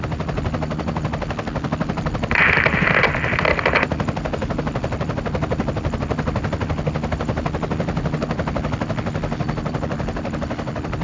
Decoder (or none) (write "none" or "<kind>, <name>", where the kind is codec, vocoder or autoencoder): none